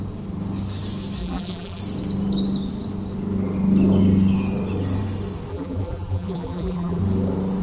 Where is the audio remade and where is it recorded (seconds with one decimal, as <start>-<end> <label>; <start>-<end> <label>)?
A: 0.0-1.2 recorded; 1.2-1.8 remade; 1.8-5.5 recorded; 5.5-7.0 remade; 7.0-7.6 recorded